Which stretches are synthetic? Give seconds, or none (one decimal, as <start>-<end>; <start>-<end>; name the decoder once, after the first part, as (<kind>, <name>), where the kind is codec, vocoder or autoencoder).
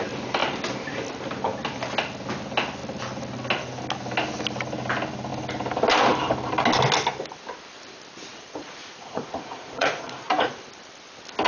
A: 8.3-10.5 (vocoder, Vocos)